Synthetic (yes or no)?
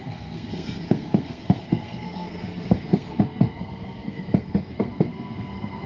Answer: yes